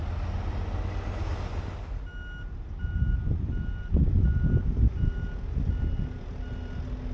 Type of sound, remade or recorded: recorded